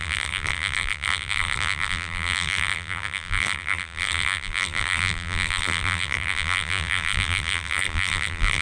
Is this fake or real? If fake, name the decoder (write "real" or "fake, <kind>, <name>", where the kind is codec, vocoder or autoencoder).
fake, vocoder, BigVGAN v2